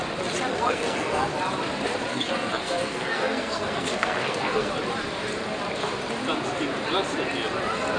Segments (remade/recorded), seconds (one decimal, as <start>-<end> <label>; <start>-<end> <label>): 0.0-0.5 recorded; 0.5-1.3 remade; 1.3-2.1 recorded; 2.1-4.7 remade; 4.7-8.0 recorded